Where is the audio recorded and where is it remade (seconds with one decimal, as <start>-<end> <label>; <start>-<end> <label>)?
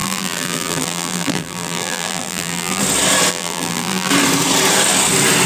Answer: 0.0-2.8 remade; 2.8-3.3 recorded; 3.3-4.1 remade; 4.1-5.5 recorded